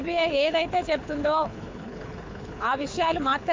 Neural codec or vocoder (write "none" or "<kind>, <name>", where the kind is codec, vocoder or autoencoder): codec, HILCodec